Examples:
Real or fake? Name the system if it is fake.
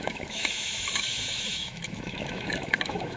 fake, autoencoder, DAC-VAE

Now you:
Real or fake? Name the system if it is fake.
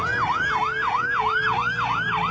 real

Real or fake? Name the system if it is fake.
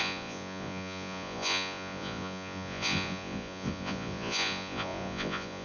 fake, vocoder, Vocos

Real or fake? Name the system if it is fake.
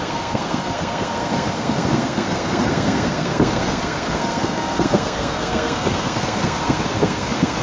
fake, codec, SNAC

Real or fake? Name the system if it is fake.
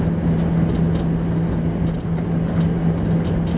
real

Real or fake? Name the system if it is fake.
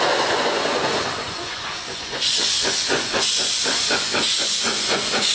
fake, vocoder, Vocos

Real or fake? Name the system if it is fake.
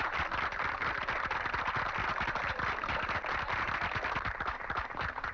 real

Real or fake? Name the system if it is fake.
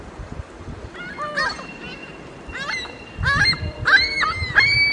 fake, vocoder, BigVGAN v2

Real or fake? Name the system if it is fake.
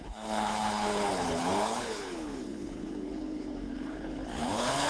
fake, codec, HILCodec